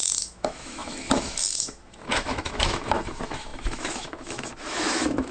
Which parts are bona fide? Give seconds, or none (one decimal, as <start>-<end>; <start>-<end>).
none